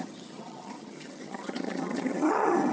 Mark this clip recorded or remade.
remade